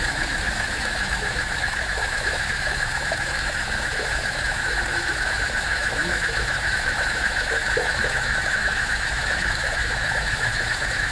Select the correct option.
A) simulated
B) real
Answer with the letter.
A